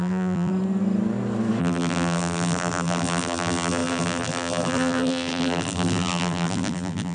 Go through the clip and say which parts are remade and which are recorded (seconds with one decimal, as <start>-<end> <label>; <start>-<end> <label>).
0.0-0.5 remade; 0.5-1.6 recorded; 1.6-7.1 remade